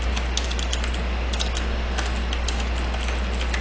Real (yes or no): yes